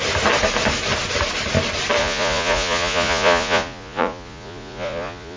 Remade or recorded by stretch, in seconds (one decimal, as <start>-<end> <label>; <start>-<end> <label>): 0.0-2.0 recorded; 2.0-5.4 remade